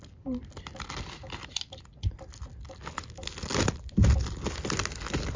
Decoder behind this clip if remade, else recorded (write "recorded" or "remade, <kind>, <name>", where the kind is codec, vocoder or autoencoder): recorded